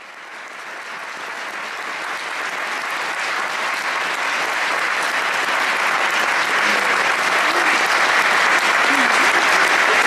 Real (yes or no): yes